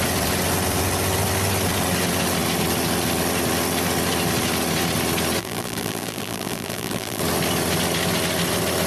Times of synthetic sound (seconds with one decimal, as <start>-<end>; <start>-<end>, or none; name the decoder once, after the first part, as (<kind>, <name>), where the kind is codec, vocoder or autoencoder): 5.4-7.2 (vocoder, BigVGAN v2)